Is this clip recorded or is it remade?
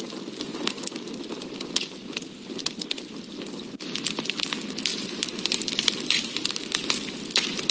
recorded